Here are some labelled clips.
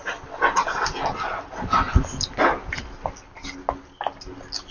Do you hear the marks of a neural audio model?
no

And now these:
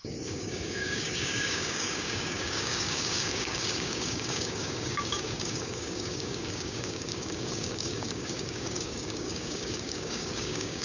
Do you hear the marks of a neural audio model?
yes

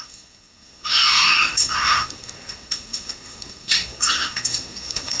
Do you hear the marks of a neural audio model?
yes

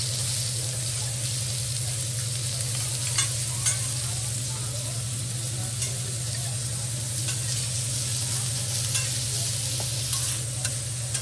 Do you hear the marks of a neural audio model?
no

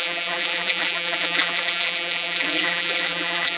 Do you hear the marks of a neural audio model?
yes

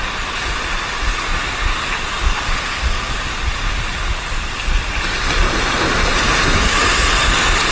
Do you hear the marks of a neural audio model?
no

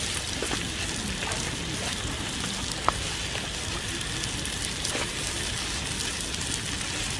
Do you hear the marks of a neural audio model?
no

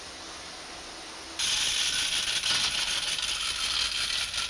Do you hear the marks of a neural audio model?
no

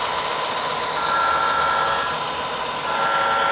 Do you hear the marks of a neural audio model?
no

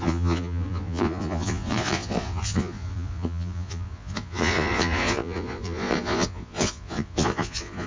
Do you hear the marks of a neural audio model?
yes